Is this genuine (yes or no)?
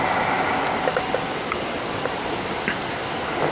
yes